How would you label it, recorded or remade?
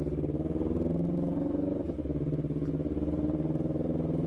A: recorded